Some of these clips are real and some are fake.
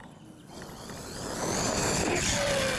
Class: real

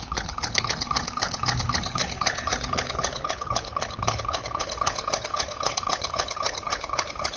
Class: fake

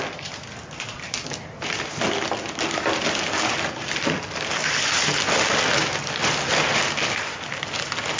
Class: real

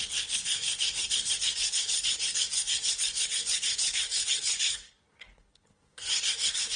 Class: fake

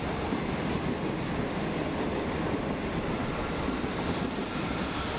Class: real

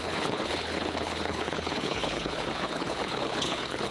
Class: fake